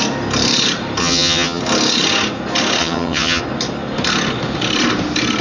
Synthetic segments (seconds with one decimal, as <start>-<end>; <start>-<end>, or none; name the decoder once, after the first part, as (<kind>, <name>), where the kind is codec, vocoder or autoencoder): 1.0-1.6 (vocoder, HiFi-GAN); 2.8-3.4